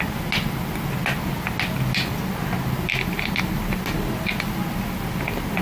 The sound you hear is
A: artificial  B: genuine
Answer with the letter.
B